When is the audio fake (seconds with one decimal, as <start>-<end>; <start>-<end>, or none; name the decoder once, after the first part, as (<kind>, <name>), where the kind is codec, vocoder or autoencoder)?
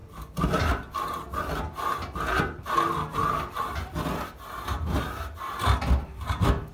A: none